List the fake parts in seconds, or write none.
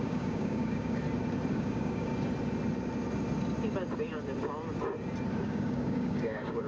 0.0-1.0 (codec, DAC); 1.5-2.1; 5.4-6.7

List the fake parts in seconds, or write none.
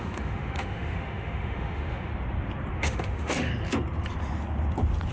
0.0-2.1 (autoencoder, DAC-VAE); 2.7-3.5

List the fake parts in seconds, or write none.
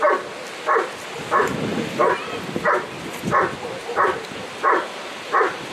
3.8-4.4 (vocoder, BigVGAN v2)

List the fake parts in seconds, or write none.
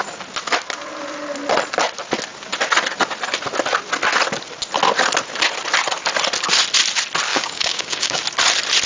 7.3-8.2 (codec, DAC)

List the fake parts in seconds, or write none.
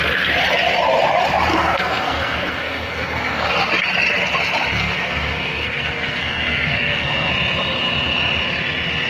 1.5-3.5 (codec, SNAC); 4.7-7.3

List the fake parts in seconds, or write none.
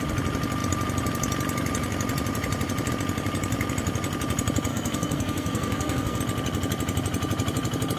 4.7-6.2 (codec, SNAC)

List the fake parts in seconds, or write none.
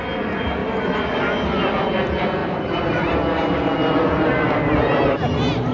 0.6-1.1 (vocoder, BigVGAN v2)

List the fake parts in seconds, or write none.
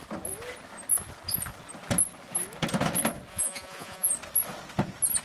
3.3-4.1 (vocoder, Vocos)